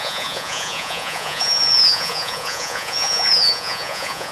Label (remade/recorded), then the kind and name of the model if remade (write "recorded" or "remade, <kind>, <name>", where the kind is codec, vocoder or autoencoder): remade, vocoder, Vocos